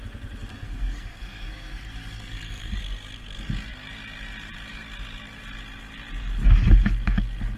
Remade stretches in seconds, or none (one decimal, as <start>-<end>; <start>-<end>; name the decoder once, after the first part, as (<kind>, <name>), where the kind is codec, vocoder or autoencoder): 0.5-2.8 (codec, SNAC)